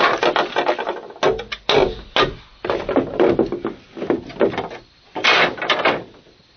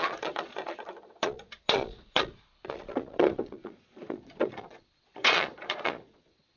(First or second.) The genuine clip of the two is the first